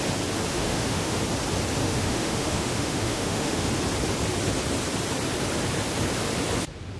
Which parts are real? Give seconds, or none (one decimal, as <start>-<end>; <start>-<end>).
0.0-0.5; 1.2-1.8; 3.7-7.0